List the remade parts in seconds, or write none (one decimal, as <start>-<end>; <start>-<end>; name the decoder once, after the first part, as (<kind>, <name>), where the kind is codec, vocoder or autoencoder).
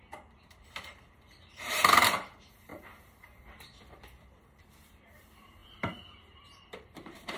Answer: 0.0-7.4 (vocoder, BigVGAN v2)